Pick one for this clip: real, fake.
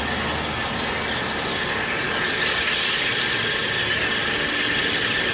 real